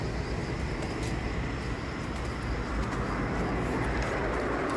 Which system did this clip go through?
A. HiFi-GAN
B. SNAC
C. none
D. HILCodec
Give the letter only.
C